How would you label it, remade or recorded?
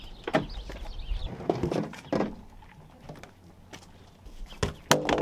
recorded